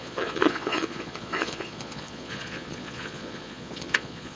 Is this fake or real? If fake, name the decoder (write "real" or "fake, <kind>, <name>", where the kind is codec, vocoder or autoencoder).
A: fake, vocoder, Vocos